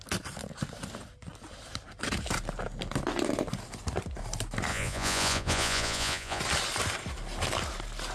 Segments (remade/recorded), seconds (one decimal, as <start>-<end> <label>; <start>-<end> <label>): 0.0-4.7 recorded; 4.7-6.4 remade; 6.4-8.1 recorded